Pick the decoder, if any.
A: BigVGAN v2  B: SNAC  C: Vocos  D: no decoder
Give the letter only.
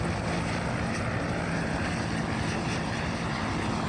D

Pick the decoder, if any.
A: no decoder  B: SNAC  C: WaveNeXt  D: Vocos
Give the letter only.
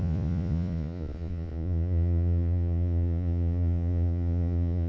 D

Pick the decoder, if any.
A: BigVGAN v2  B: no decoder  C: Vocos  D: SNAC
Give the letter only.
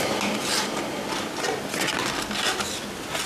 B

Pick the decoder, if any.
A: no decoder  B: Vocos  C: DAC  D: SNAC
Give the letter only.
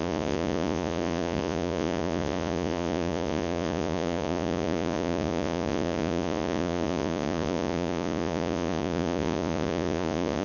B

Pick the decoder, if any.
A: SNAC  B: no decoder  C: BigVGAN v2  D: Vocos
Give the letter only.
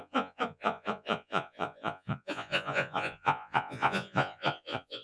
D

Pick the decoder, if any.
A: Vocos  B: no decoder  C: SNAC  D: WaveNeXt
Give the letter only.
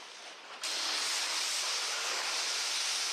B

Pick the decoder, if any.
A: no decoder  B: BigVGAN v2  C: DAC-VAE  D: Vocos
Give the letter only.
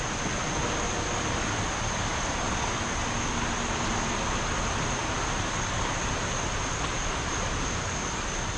A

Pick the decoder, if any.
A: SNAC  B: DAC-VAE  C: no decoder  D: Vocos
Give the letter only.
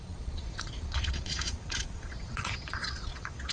D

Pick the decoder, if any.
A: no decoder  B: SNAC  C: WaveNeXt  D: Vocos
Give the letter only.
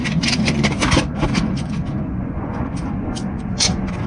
D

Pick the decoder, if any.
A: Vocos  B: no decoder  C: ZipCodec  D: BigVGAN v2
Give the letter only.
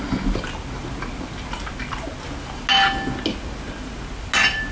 B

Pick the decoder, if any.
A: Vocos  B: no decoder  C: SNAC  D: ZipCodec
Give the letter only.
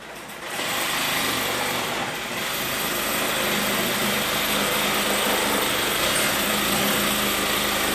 B